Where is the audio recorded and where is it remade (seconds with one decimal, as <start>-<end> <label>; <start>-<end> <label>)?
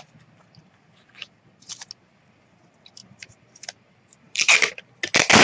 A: 0.0-3.0 recorded; 3.0-4.7 remade; 4.7-5.4 recorded